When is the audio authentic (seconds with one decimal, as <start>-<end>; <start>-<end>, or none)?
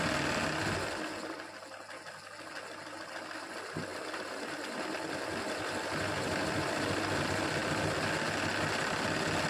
0.0-9.5